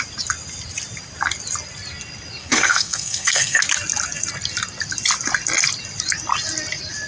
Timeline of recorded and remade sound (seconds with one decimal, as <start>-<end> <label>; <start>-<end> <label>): 0.0-2.4 recorded; 2.4-3.6 remade; 3.6-7.1 recorded